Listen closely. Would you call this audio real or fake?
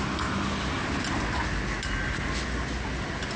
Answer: real